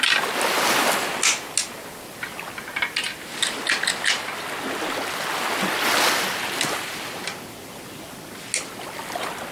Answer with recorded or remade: recorded